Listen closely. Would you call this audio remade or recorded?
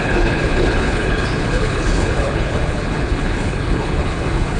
remade